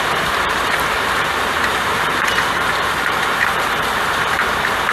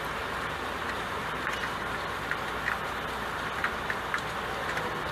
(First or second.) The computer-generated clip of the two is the first